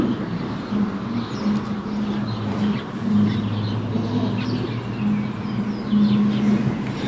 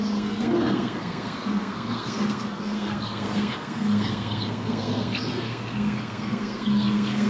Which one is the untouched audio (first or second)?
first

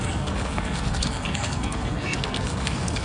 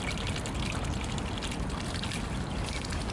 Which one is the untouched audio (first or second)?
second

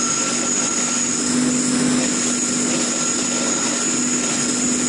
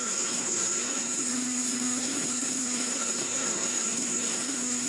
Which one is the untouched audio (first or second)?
first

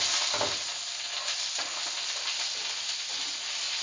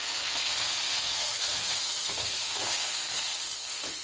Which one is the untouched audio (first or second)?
first